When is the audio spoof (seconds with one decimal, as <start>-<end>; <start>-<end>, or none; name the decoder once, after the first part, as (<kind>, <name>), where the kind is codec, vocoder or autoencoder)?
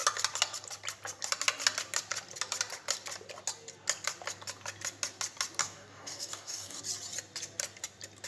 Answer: 5.6-6.8 (codec, DAC)